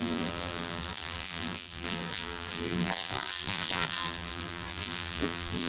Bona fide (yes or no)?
no